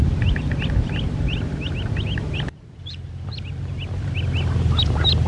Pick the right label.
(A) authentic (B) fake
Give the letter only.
A